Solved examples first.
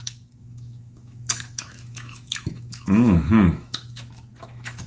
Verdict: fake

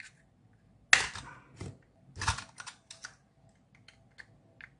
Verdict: real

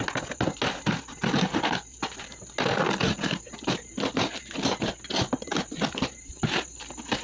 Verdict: real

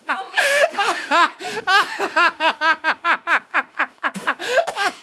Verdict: fake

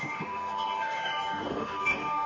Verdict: fake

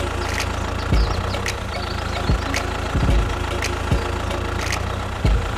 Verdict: real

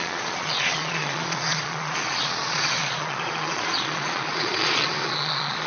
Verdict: fake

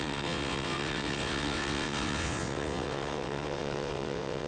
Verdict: fake